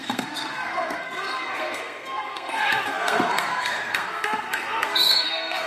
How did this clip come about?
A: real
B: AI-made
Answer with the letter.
B